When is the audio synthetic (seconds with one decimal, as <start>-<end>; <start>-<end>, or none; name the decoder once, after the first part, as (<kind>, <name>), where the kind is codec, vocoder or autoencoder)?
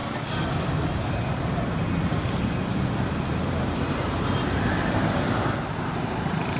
1.1-6.6 (vocoder, BigVGAN v2)